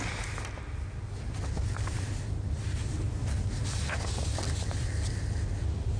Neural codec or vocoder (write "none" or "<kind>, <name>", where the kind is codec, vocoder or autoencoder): none